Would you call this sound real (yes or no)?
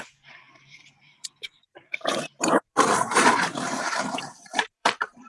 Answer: no